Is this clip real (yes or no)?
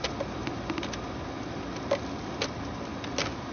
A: yes